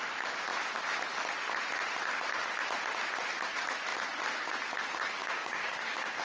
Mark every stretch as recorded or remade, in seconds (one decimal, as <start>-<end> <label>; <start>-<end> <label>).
0.0-5.2 recorded; 5.2-6.2 remade

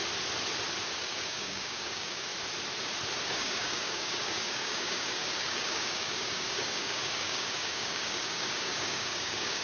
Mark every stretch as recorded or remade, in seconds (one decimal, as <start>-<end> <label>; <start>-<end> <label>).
0.0-1.0 recorded; 1.0-2.3 remade; 2.3-3.3 recorded; 3.3-9.6 remade